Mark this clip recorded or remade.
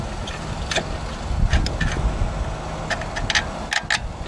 recorded